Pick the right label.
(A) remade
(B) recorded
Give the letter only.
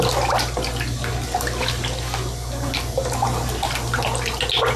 B